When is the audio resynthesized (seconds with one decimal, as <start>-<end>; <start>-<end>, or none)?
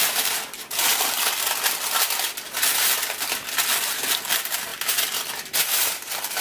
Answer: 0.0-0.9; 3.8-4.7; 5.8-6.4